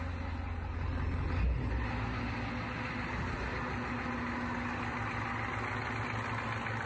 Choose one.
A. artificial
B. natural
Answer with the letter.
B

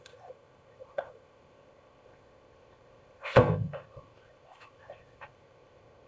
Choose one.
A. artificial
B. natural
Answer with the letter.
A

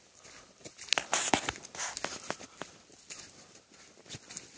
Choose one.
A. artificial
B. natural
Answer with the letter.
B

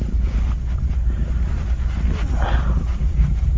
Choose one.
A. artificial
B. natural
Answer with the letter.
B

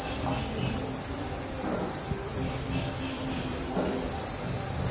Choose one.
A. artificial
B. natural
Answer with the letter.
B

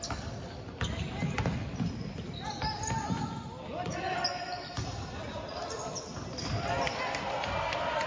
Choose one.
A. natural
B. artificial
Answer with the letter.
A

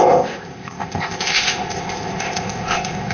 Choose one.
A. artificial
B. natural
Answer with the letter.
A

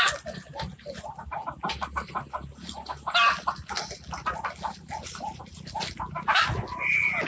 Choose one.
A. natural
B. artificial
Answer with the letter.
A